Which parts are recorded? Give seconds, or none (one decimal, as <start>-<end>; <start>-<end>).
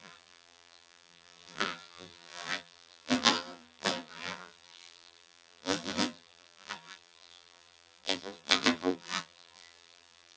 none